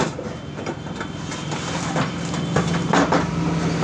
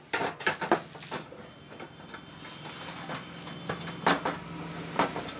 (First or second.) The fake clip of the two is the first